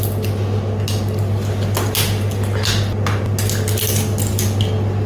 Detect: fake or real real